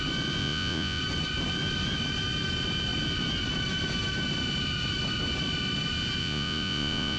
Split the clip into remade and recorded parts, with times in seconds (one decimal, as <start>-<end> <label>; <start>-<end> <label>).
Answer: 0.0-0.4 recorded; 0.4-1.0 remade; 1.0-6.2 recorded; 6.2-7.2 remade